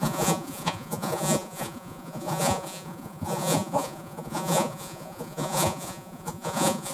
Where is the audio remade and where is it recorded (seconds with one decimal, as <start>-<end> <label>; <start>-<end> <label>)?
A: 0.0-6.9 remade